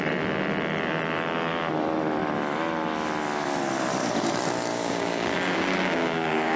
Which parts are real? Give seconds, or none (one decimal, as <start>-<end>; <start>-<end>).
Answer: 0.0-4.7